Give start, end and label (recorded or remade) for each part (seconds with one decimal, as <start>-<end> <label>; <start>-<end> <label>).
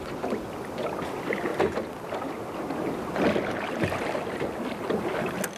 0.0-5.6 recorded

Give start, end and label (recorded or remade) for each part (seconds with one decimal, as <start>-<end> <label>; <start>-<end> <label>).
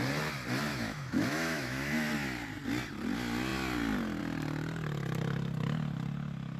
0.0-0.7 recorded; 0.7-2.1 remade; 2.1-6.6 recorded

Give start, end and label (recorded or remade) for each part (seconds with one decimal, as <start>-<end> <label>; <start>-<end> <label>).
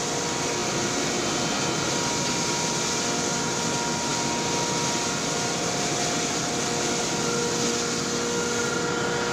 0.0-9.3 recorded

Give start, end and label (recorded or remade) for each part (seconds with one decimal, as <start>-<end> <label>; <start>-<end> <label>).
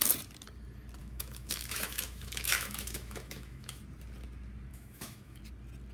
0.0-1.0 recorded; 1.0-3.8 remade; 3.8-4.7 recorded; 4.7-5.4 remade; 5.4-5.9 recorded